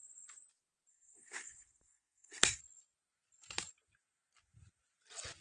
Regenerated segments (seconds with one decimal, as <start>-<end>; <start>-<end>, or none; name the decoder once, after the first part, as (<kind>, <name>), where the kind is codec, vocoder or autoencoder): 0.9-2.6 (codec, SNAC)